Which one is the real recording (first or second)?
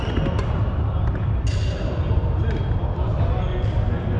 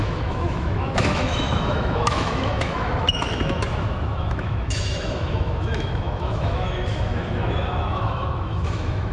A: first